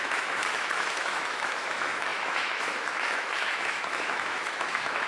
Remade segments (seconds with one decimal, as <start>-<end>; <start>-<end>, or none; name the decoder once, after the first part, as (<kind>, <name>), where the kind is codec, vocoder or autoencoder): 0.0-5.1 (autoencoder, DAC-VAE)